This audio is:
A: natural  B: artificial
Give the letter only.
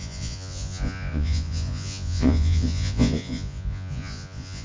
B